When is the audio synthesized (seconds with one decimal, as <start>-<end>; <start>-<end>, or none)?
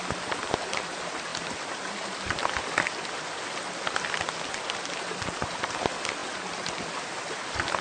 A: none